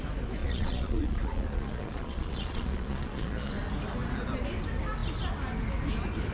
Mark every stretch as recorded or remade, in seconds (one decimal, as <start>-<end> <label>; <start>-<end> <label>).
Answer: 0.0-0.4 recorded; 0.4-3.5 remade; 3.5-6.3 recorded